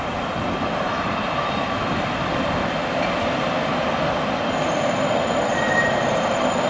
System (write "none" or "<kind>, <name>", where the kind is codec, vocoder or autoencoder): none